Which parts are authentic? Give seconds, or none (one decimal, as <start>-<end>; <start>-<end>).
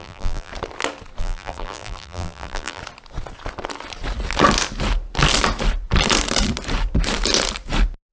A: 0.5-1.2; 2.8-8.1